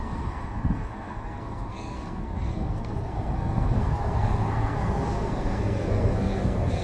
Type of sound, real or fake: fake